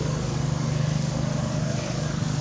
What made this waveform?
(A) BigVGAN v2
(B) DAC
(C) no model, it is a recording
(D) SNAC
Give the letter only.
B